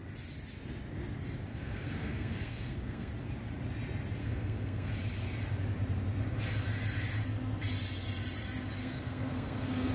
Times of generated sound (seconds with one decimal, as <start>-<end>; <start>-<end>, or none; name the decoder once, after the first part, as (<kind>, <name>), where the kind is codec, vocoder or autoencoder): 1.5-3.1 (codec, SNAC); 4.2-4.9; 8.8-9.9